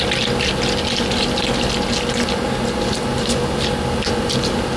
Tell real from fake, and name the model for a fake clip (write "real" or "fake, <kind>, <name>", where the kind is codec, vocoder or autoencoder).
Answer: real